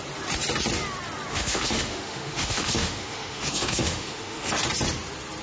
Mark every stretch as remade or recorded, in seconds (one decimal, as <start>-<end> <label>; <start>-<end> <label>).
0.0-1.3 recorded; 1.3-4.5 remade; 4.5-5.4 recorded